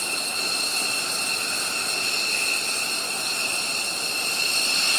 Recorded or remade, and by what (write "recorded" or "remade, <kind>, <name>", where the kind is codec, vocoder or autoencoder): recorded